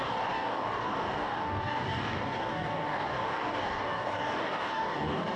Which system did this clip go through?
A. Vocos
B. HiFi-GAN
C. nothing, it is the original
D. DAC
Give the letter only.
D